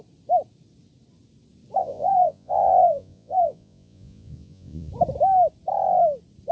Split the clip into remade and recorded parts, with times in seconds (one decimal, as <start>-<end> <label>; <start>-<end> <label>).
0.0-1.8 recorded; 1.8-4.9 remade; 4.9-6.5 recorded